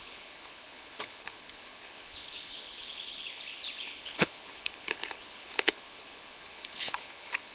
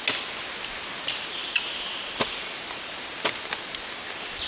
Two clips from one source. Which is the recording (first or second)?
second